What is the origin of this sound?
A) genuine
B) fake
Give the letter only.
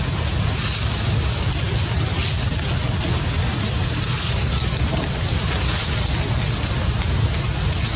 A